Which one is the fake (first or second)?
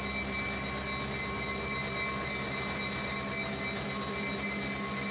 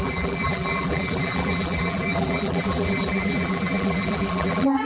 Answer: second